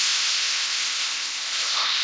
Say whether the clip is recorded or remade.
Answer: remade